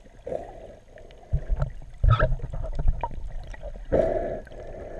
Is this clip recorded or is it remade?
recorded